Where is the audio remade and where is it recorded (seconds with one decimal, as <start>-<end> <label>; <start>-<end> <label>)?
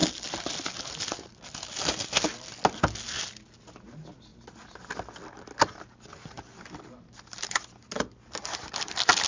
0.0-9.3 recorded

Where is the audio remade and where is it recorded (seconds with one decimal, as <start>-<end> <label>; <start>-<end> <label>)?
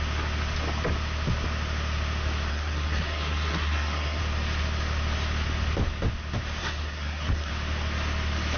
0.0-2.5 recorded; 2.5-4.2 remade; 4.2-6.6 recorded; 6.6-7.5 remade; 7.5-8.6 recorded